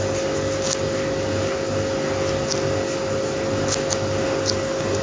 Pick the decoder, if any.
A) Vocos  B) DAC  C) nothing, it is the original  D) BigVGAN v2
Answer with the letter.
C